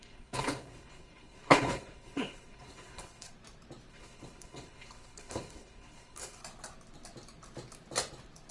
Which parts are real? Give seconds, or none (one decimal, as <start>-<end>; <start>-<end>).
3.3-3.9; 6.4-8.5